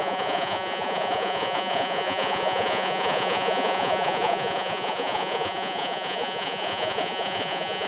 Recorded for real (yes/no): no